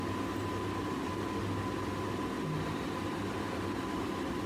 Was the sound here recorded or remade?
recorded